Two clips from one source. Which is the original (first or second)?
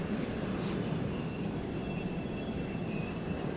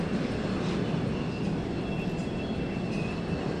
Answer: second